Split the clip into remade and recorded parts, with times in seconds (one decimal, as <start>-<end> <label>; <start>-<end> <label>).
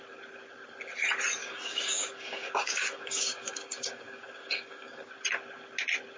0.0-1.4 recorded; 1.4-5.1 remade; 5.1-6.2 recorded